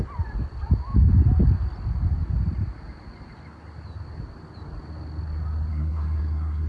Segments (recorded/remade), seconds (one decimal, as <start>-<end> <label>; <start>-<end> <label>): 0.0-5.7 recorded; 5.7-6.7 remade